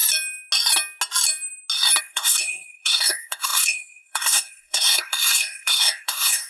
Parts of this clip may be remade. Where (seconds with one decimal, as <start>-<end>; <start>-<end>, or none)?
2.0-6.5